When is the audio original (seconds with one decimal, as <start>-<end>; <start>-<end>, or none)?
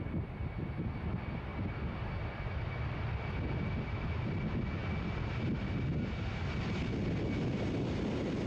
0.0-8.5